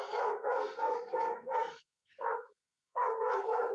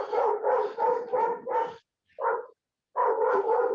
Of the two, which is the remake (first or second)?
first